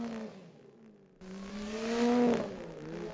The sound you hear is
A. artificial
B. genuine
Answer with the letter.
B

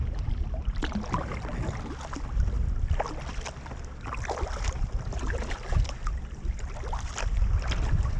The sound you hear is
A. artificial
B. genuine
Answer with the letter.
B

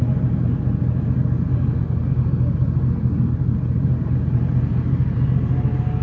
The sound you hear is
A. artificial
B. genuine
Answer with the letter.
B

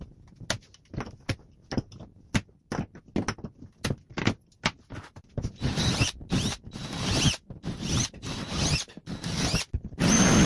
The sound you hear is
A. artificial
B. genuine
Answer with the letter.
B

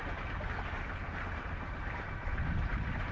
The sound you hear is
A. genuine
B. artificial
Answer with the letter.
B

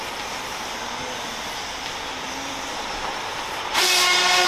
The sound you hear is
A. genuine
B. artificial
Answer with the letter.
A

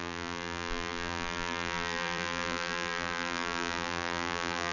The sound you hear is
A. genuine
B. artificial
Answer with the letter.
B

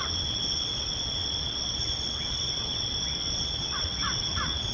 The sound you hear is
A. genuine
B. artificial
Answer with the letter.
B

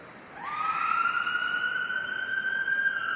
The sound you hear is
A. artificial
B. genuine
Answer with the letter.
B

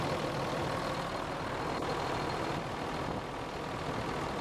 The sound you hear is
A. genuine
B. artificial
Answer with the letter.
A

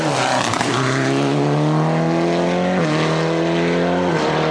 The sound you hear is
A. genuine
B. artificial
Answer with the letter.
A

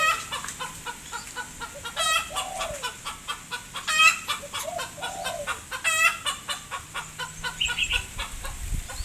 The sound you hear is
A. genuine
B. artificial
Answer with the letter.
A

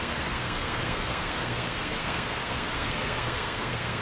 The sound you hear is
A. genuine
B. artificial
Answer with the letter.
B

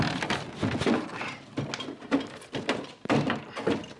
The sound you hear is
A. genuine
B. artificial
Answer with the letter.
A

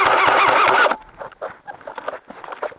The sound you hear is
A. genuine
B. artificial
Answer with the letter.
A